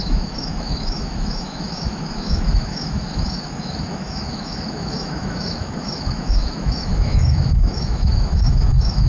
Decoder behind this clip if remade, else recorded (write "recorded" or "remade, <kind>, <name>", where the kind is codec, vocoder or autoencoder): remade, autoencoder, DAC-VAE